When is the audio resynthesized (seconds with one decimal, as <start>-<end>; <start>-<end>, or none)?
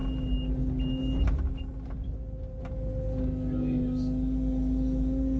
none